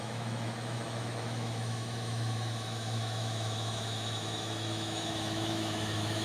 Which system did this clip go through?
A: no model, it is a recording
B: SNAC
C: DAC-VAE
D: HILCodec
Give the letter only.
C